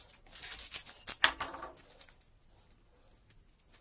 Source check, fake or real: real